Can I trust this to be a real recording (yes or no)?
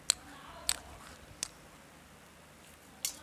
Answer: yes